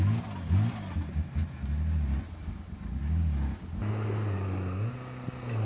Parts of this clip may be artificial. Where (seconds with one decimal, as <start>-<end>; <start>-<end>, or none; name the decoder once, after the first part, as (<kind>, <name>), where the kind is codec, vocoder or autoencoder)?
none